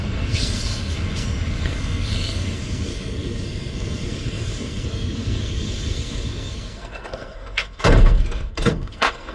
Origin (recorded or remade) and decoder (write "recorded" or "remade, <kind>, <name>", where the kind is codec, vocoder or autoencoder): remade, codec, SNAC